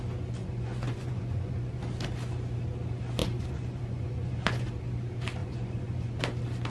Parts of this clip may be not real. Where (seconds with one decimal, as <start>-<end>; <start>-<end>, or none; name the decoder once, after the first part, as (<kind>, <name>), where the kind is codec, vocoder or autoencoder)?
0.4-1.8 (vocoder, Vocos); 3.2-4.7; 5.4-6.2